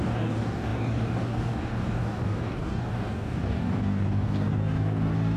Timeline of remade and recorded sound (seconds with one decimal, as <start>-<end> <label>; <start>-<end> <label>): 0.0-5.4 remade